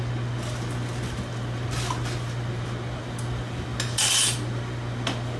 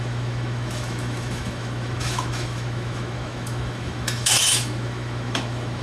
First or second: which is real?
first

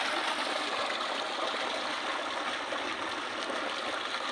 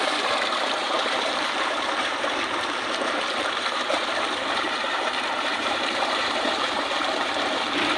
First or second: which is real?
first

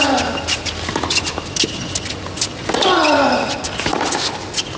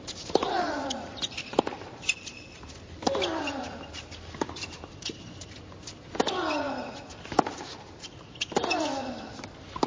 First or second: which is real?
first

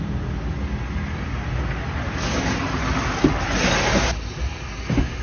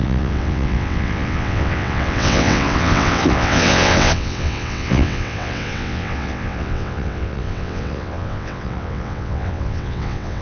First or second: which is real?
first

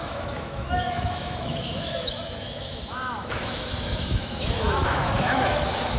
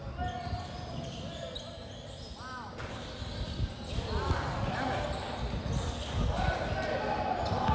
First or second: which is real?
second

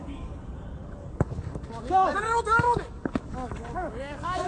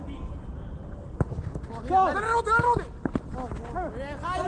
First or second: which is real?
second